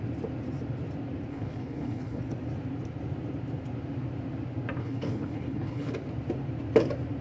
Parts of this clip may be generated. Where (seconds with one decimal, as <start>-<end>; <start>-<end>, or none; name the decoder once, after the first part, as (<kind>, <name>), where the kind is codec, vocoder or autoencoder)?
1.3-2.2 (codec, HILCodec); 4.8-5.9